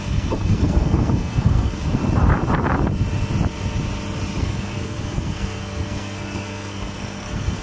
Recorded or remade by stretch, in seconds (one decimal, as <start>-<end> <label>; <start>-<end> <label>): 0.0-2.0 remade; 2.0-4.4 recorded; 4.4-7.6 remade

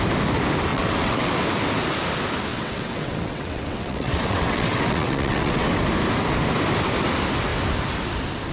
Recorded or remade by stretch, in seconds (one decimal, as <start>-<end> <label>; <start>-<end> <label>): 0.0-0.7 recorded; 0.7-1.3 remade; 1.3-2.5 recorded; 2.5-5.8 remade; 5.8-8.5 recorded

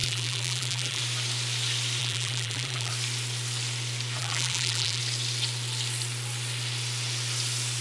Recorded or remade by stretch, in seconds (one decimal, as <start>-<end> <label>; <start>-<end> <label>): 0.0-1.0 remade; 1.0-2.0 recorded; 2.0-2.9 remade; 2.9-4.2 recorded; 4.2-5.0 remade; 5.0-7.8 recorded

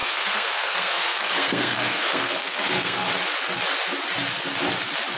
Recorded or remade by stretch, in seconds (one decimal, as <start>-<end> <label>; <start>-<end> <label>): 0.0-3.1 remade; 3.1-5.2 recorded